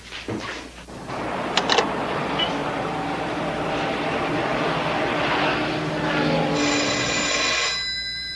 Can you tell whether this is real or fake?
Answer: real